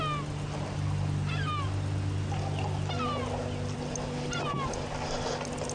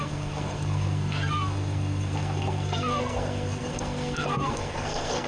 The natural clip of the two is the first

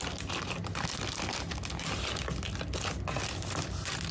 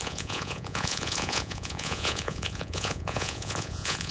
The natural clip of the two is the first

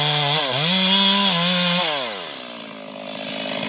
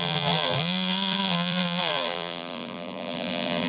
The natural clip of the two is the first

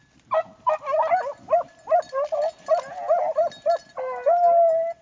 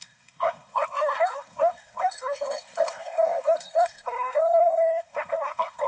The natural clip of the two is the first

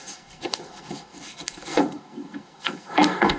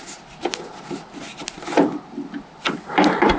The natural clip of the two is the second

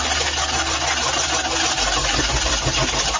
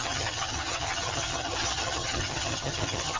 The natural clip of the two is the first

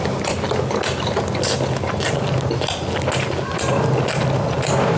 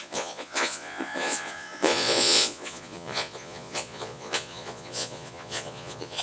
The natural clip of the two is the first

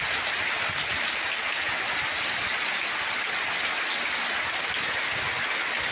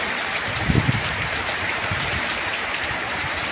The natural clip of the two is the first